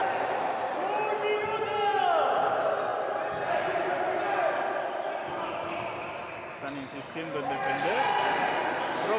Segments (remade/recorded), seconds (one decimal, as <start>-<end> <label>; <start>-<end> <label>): 0.0-0.7 remade; 0.7-2.9 recorded; 2.9-4.1 remade; 4.1-9.2 recorded